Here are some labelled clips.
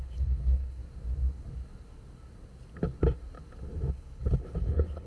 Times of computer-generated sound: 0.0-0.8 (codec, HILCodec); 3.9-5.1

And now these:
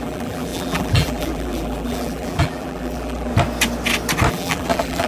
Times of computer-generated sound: 0.0-3.3 (vocoder, BigVGAN v2); 4.3-5.1

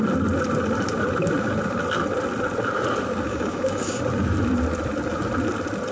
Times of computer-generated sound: 3.3-4.0 (codec, DAC)